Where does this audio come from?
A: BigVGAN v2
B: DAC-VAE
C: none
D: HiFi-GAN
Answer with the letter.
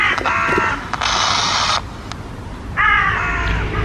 C